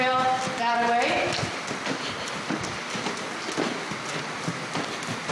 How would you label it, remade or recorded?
recorded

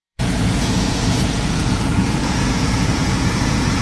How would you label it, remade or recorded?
remade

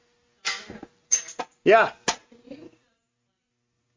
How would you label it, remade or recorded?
recorded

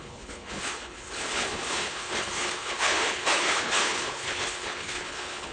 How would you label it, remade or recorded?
remade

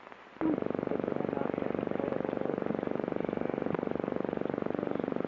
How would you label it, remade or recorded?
recorded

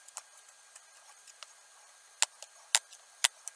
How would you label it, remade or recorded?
recorded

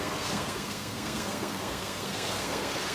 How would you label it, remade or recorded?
remade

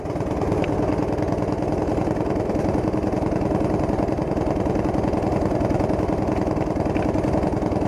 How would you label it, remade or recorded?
recorded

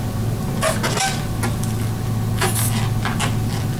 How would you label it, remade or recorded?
recorded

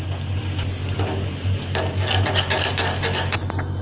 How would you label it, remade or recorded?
recorded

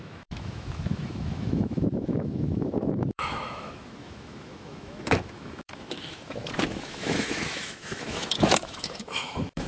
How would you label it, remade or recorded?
remade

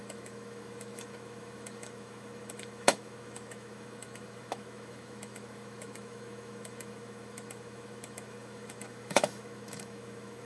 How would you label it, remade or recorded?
remade